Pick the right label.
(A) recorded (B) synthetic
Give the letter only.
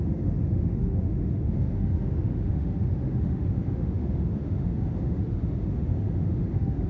B